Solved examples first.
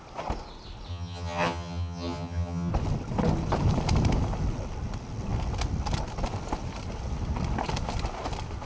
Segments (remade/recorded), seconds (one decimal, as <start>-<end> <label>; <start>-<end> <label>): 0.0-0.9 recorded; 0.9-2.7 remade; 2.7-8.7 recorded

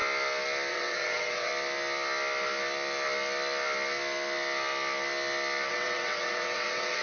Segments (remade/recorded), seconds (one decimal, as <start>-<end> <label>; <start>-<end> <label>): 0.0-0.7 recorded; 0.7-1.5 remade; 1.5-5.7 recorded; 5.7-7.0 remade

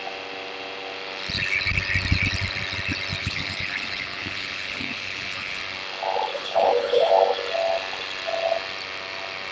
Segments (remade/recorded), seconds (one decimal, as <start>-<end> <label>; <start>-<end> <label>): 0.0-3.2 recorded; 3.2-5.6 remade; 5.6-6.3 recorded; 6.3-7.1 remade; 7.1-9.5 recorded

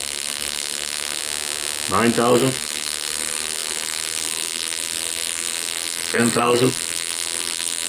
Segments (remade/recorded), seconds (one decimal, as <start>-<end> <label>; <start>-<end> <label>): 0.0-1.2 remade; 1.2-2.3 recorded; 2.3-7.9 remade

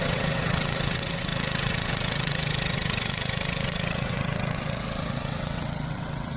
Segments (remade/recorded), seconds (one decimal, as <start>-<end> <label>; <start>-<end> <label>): 0.0-6.4 remade

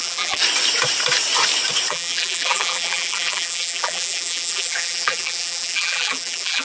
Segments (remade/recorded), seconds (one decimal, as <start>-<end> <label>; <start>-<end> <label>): 0.0-0.4 remade; 0.4-1.9 recorded; 1.9-6.6 remade

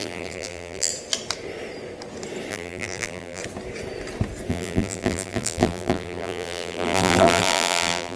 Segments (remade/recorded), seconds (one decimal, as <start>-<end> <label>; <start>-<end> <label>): 0.0-0.9 remade; 0.9-2.5 recorded; 2.5-3.4 remade; 3.4-4.5 recorded; 4.5-8.2 remade